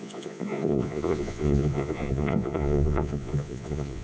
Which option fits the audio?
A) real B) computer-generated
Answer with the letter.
B